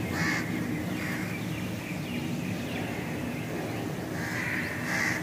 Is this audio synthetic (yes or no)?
no